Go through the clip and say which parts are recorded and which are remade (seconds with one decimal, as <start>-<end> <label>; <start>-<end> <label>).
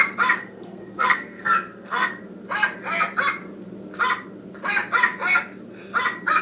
0.0-0.4 recorded; 0.4-2.2 remade; 2.2-6.4 recorded